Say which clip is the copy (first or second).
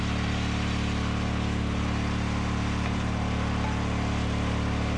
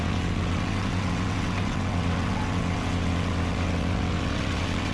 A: second